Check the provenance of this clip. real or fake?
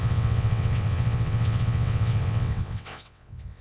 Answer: fake